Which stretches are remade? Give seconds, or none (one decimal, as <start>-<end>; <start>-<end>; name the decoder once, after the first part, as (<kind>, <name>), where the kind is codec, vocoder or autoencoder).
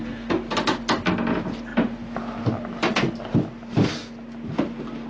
none